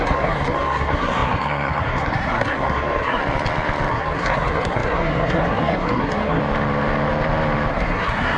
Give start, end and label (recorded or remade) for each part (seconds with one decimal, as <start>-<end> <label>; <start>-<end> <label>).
0.0-3.2 remade; 3.2-3.9 recorded; 3.9-6.4 remade; 6.4-7.7 recorded; 7.7-8.4 remade